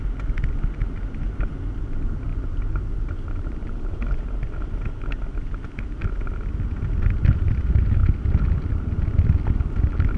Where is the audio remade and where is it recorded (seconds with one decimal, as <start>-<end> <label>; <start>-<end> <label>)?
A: 0.0-2.3 recorded; 2.3-4.2 remade; 4.2-10.2 recorded